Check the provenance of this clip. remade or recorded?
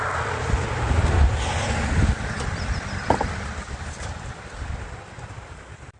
recorded